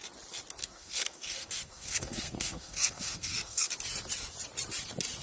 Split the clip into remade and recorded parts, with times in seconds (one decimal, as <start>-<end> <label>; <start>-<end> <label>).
0.0-0.6 recorded; 0.6-3.7 remade; 3.7-5.2 recorded